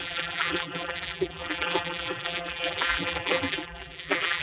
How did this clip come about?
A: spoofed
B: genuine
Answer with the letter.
A